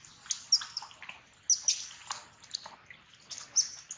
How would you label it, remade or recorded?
recorded